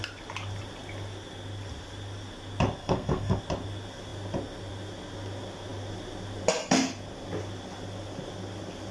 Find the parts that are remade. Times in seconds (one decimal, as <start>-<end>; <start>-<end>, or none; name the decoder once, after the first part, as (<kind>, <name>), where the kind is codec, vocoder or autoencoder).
2.8-3.4 (codec, SNAC)